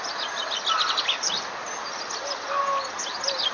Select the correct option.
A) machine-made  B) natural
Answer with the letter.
B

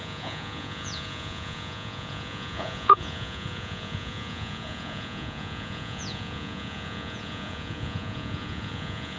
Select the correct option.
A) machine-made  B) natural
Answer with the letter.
A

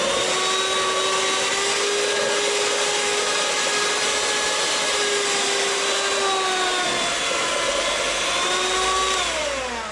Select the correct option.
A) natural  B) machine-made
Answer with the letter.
A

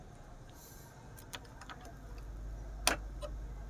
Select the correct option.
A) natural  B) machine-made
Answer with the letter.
A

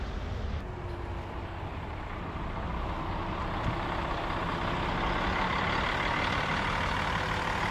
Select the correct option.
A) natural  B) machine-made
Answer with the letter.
A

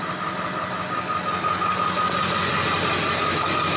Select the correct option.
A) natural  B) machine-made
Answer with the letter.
A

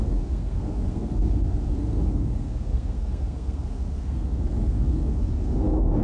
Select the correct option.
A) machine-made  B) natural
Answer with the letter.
A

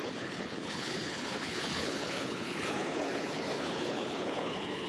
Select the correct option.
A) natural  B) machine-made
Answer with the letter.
B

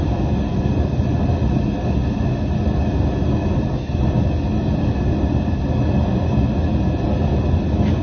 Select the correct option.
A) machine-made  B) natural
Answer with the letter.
B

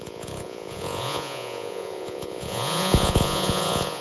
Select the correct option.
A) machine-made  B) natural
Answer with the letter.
A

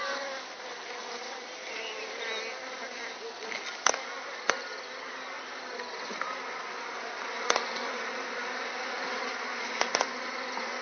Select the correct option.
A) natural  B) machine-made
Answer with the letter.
A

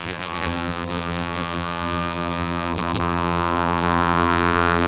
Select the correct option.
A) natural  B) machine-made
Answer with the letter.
B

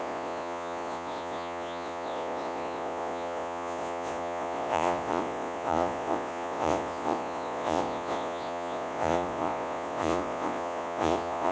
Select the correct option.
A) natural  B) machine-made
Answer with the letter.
B